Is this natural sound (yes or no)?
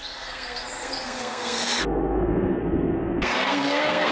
no